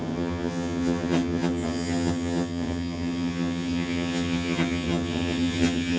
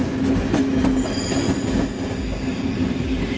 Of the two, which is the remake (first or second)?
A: first